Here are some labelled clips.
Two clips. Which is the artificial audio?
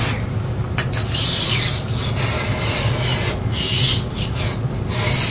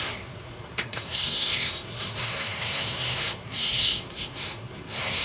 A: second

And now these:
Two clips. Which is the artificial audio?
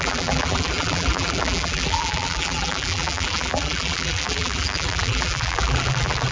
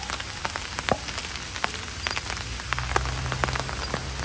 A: first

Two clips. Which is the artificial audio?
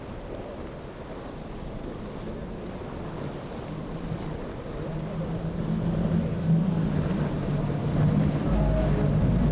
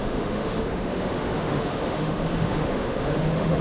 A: second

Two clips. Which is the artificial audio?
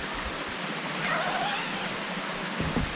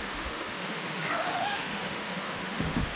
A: second